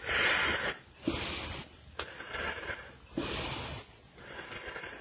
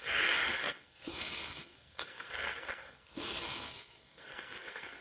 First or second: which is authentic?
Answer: first